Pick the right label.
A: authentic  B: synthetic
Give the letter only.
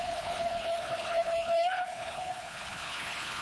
B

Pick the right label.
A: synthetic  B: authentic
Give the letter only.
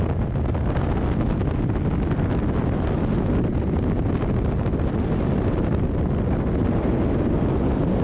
B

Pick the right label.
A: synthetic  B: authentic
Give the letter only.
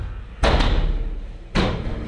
B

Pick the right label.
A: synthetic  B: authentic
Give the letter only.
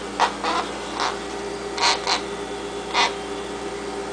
B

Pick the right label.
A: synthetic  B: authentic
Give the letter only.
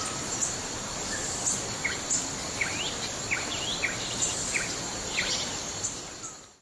B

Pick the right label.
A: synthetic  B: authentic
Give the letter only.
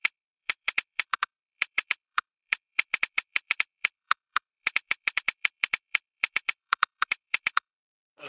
A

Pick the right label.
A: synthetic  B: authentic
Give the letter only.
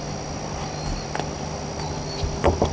B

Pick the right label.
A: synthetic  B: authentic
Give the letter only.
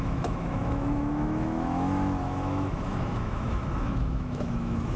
A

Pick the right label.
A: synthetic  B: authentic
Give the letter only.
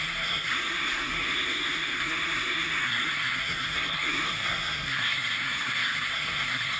A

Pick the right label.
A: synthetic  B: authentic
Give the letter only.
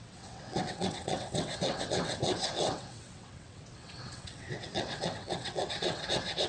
A